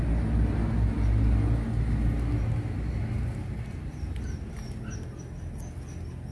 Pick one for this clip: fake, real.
real